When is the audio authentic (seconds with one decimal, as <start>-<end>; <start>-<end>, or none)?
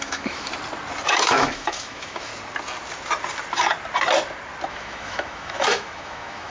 0.5-1.1; 2.3-4.7